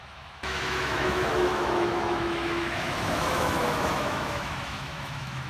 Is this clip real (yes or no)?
no